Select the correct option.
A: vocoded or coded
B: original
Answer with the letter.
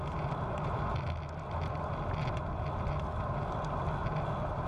B